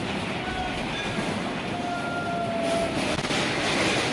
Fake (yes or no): no